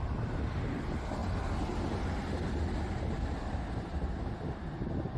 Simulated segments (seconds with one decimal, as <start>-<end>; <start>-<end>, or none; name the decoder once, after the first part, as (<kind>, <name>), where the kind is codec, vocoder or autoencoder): none